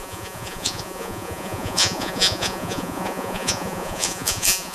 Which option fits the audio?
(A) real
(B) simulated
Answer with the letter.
B